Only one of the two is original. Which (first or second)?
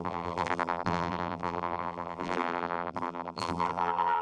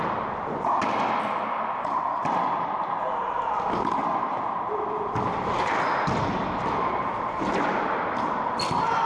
second